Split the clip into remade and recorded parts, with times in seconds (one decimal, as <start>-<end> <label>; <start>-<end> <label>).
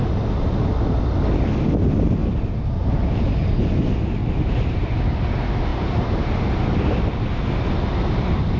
0.0-2.2 recorded; 2.2-3.6 remade; 3.6-4.2 recorded; 4.2-5.0 remade; 5.0-5.7 recorded; 5.7-6.3 remade; 6.3-8.6 recorded